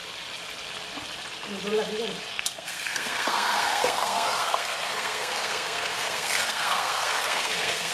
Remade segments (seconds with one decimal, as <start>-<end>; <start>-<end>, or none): 2.3-7.9